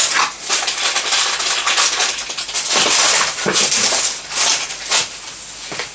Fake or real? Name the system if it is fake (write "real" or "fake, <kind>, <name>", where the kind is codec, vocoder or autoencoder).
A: real